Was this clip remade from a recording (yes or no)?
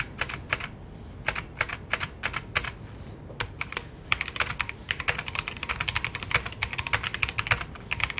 no